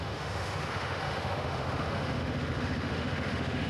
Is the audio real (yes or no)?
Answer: no